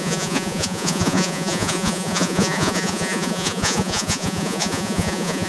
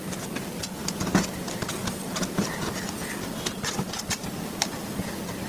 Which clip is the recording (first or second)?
second